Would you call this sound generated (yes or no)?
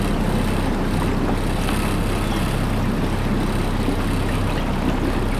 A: no